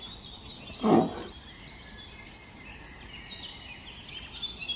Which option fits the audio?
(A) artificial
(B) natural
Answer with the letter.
B